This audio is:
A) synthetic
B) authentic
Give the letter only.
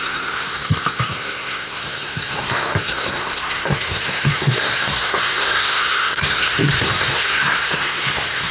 A